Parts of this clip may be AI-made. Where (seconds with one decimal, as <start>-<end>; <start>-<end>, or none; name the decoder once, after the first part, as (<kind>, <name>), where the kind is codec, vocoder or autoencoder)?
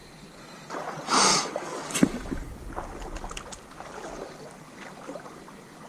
1.3-2.7 (codec, DAC)